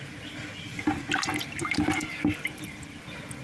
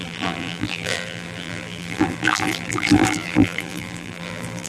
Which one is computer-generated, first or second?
second